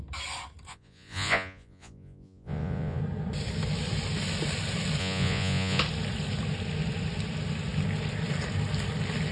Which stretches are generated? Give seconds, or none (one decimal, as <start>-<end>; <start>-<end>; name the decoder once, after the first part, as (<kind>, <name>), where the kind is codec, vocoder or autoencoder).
0.7-3.0 (vocoder, Vocos); 5.0-5.8